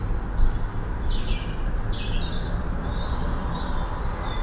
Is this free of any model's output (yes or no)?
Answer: yes